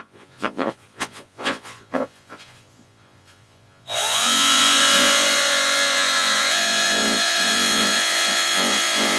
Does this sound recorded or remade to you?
remade